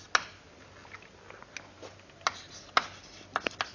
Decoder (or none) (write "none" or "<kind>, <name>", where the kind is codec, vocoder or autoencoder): none